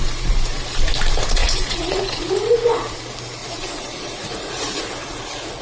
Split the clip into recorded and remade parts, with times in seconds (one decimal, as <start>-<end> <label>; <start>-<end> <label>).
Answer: 0.0-1.4 recorded; 1.4-3.0 remade; 3.0-3.4 recorded; 3.4-4.8 remade; 4.8-5.6 recorded